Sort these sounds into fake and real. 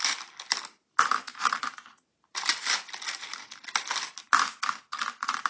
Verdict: real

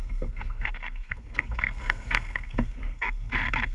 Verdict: fake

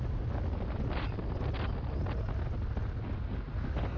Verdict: real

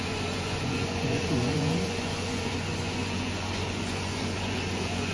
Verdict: fake